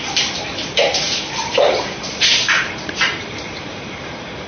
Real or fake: fake